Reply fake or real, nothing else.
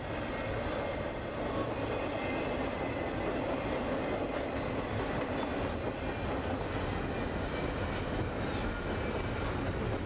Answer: real